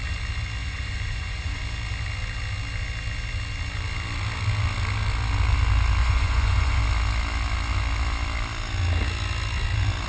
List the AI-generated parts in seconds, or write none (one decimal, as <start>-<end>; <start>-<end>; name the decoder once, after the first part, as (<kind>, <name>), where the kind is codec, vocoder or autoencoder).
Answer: 0.6-1.6 (vocoder, Vocos); 6.0-6.8